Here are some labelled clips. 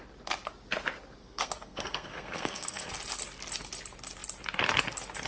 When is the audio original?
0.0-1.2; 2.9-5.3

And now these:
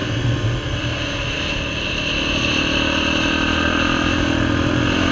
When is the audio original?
0.0-5.1